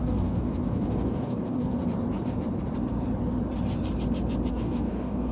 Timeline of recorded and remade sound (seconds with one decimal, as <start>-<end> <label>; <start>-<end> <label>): 0.0-1.8 remade; 1.8-4.5 recorded; 4.5-5.3 remade